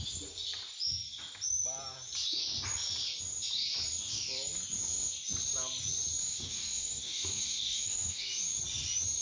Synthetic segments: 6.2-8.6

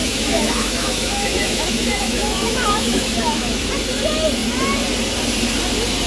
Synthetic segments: 0.0-3.7

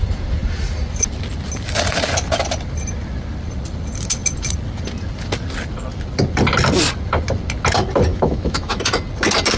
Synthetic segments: 8.1-8.8

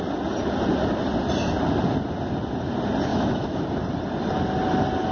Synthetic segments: 3.1-3.6

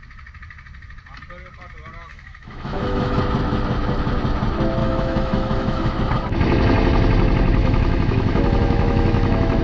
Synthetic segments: 2.1-3.2; 4.8-5.9; 7.6-9.6

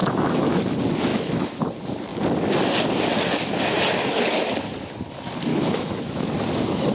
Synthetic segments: 0.0-0.6; 1.1-1.6; 5.5-6.3

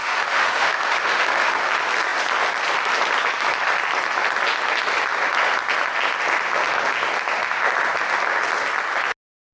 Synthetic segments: 0.0-1.7